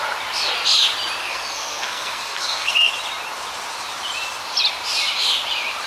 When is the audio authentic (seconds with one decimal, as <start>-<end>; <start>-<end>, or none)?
0.0-1.2; 2.9-5.9